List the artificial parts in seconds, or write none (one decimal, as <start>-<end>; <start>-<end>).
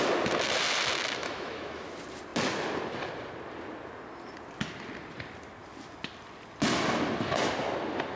1.2-1.9